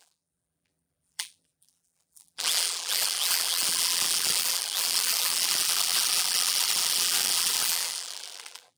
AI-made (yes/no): yes